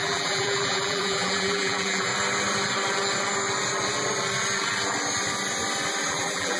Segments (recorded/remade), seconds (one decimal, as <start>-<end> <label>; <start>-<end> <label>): 0.0-2.1 remade; 2.1-6.1 recorded; 6.1-6.6 remade